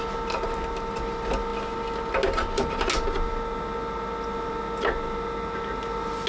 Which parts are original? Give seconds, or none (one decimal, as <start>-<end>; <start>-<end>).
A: 0.0-6.3